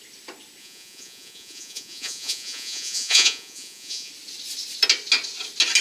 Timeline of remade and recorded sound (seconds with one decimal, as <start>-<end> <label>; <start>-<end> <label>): 0.0-0.6 recorded; 0.6-4.1 remade; 4.1-5.8 recorded